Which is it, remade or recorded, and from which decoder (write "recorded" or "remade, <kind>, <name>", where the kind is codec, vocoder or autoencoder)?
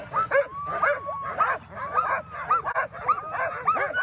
recorded